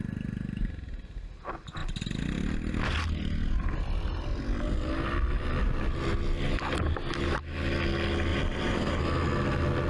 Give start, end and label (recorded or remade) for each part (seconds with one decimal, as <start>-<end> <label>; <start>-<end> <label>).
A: 0.0-8.3 recorded; 8.3-9.0 remade; 9.0-9.9 recorded